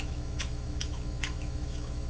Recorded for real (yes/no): no